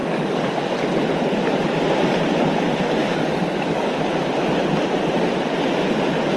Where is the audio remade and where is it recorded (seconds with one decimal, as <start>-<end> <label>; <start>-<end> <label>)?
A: 0.0-0.5 remade; 0.5-3.0 recorded; 3.0-4.0 remade; 4.0-6.4 recorded